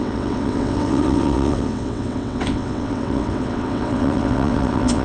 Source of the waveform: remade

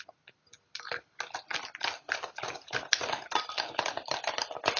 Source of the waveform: recorded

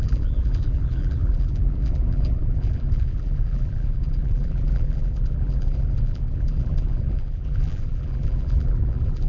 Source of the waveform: remade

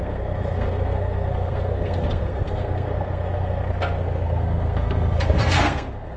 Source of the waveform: remade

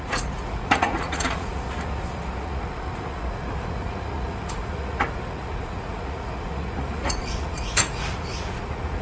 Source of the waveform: remade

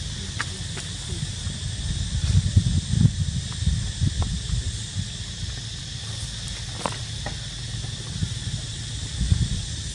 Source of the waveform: recorded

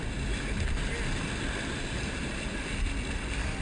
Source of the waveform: recorded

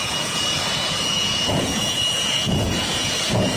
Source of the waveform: remade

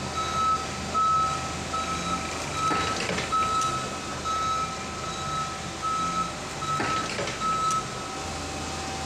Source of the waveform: recorded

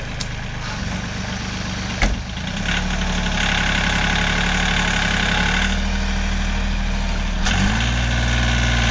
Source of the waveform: recorded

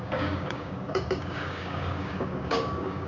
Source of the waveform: remade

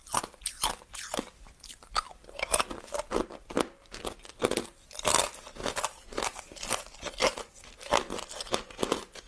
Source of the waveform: recorded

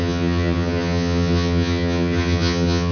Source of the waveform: remade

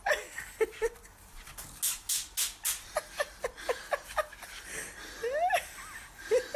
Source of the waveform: recorded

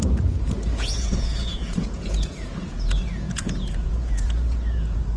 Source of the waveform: remade